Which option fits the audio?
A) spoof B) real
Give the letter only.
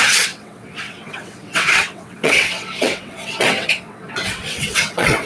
A